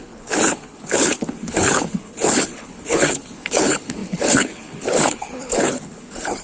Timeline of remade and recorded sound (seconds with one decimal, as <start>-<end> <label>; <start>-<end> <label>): 0.0-6.4 remade